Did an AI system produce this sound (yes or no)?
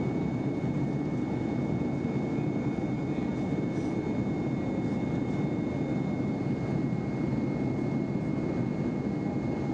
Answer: no